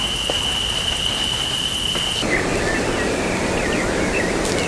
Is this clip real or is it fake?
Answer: real